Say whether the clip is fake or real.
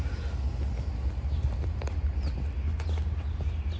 real